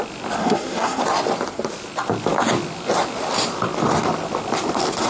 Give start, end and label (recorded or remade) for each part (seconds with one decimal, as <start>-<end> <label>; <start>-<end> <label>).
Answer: 0.0-0.4 recorded; 0.4-1.0 remade; 1.0-5.1 recorded